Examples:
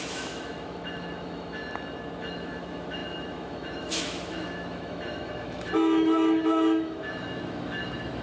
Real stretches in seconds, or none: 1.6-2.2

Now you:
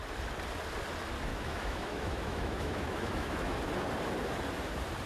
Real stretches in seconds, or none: 0.0-1.3; 3.7-5.1

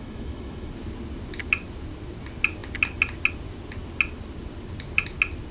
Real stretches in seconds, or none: 0.7-5.5